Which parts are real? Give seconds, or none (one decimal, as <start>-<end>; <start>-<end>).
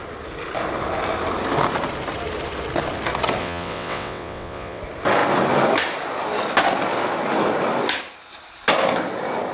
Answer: 0.0-3.4; 4.8-9.5